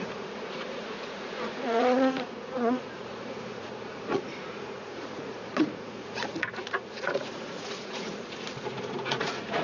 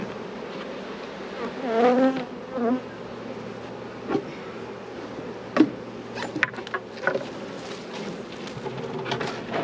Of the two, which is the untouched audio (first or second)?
second